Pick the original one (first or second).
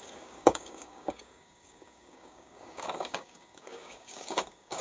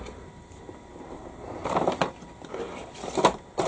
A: second